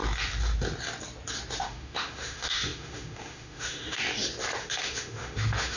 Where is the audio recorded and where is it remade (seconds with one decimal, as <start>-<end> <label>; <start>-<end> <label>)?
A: 0.0-1.6 recorded; 1.6-4.0 remade; 4.0-4.6 recorded; 4.6-5.8 remade